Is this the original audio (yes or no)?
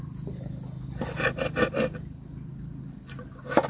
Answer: yes